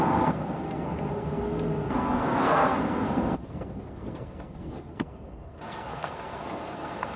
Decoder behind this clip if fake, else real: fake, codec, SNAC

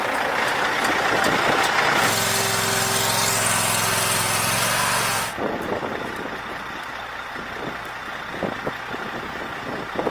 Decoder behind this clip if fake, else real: real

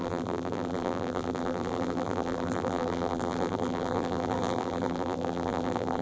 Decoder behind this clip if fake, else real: fake, vocoder, BigVGAN v2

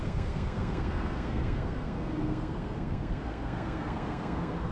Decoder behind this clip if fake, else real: fake, codec, SNAC